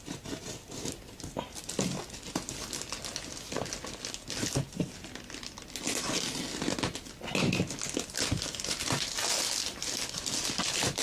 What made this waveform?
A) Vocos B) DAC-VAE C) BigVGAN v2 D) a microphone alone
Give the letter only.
D